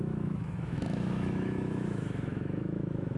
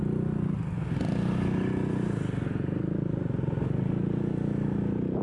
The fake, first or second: first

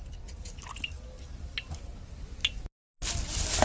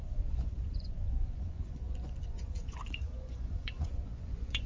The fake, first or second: second